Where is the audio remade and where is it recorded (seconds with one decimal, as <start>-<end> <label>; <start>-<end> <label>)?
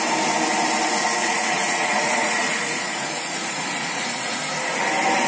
0.0-1.2 recorded; 1.2-4.4 remade; 4.4-5.3 recorded